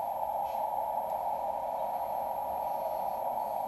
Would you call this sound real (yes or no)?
yes